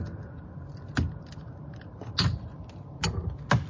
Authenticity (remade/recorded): recorded